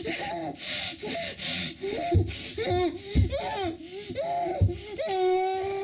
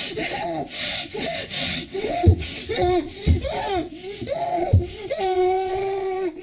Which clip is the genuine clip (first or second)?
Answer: first